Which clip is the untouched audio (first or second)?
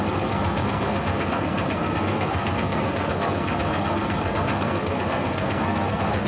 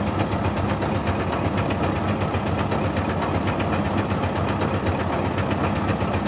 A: second